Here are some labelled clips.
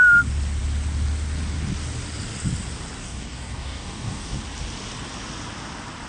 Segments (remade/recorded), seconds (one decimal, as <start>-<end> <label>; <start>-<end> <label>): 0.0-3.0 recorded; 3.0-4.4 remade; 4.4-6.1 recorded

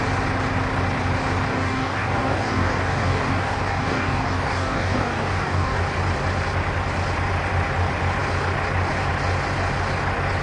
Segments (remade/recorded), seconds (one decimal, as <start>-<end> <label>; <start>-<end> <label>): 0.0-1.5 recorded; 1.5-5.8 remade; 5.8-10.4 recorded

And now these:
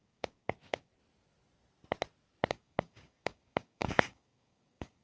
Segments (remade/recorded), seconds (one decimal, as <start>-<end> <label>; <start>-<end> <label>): 0.0-0.9 remade; 0.9-2.5 recorded; 2.5-5.0 remade